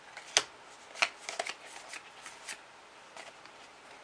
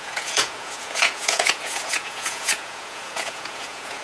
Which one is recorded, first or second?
first